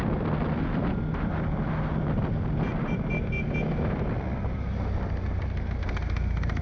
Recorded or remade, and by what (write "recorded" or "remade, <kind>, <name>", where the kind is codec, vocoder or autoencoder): recorded